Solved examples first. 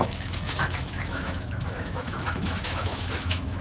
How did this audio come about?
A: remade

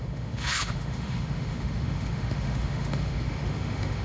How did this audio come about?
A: remade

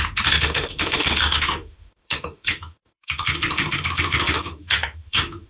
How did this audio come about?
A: remade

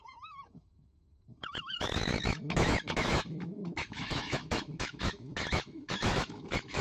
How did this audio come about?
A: remade